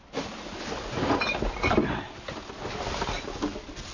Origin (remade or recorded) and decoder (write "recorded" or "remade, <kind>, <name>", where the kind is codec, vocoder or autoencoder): recorded